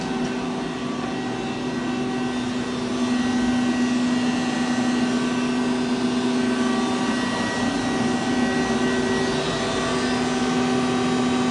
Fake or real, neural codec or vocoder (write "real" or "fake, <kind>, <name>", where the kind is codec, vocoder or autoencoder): real